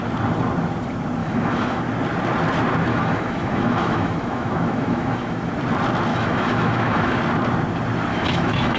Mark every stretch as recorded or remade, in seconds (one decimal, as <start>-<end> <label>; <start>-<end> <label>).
0.0-1.2 recorded; 1.2-1.8 remade; 1.8-2.9 recorded; 2.9-5.5 remade; 5.5-6.1 recorded; 6.1-7.2 remade; 7.2-8.1 recorded; 8.1-8.8 remade